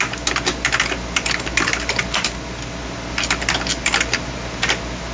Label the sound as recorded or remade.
recorded